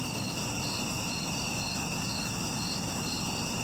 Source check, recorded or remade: recorded